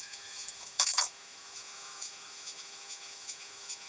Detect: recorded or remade remade